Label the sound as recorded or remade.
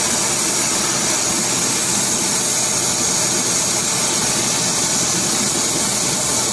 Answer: recorded